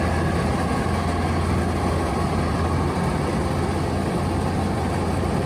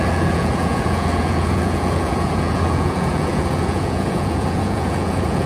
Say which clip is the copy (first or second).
second